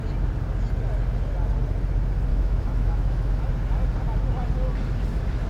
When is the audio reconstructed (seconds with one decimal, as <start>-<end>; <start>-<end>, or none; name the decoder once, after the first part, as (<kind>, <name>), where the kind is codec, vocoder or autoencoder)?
2.3-3.4 (autoencoder, DAC-VAE)